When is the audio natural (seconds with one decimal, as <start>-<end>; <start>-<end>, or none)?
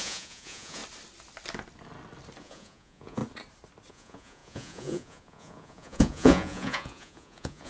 0.8-2.4; 3.2-3.9